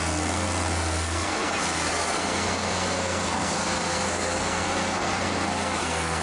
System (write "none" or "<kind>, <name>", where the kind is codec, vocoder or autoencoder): codec, SNAC